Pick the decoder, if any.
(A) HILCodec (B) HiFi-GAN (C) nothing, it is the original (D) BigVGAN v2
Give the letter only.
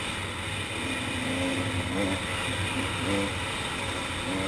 C